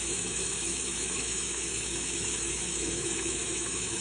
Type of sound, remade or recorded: remade